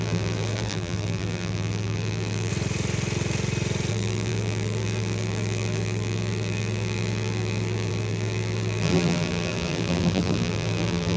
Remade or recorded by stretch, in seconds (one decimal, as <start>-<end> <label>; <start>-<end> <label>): 0.0-2.5 remade; 2.5-3.9 recorded; 3.9-11.2 remade